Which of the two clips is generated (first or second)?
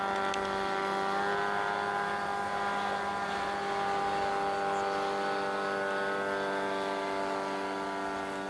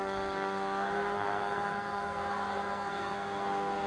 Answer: second